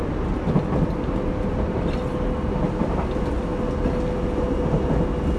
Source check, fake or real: real